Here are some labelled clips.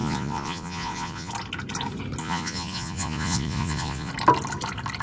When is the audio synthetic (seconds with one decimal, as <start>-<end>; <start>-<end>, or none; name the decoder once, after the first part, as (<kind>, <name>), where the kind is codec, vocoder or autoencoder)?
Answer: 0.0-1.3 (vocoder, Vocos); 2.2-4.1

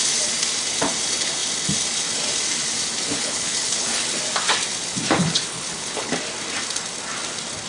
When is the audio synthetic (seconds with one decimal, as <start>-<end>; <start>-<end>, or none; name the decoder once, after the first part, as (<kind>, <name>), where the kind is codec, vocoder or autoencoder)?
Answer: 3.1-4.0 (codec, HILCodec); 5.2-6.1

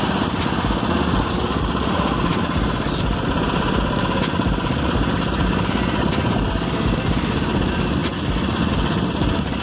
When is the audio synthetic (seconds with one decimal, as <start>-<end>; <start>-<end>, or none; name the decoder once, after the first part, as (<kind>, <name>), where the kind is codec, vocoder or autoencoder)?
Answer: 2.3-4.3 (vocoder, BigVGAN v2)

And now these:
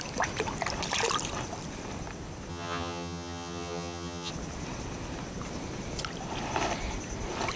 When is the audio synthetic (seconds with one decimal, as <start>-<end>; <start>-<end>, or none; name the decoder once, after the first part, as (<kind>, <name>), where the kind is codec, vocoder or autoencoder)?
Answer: 2.5-4.3 (vocoder, HiFi-GAN)

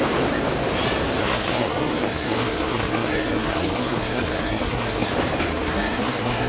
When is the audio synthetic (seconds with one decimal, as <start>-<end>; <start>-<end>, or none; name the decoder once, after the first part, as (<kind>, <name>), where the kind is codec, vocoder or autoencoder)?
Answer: 1.2-5.1 (codec, SNAC); 5.5-6.5

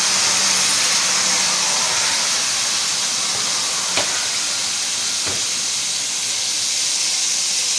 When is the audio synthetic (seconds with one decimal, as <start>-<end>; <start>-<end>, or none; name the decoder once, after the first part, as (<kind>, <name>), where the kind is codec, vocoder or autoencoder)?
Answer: none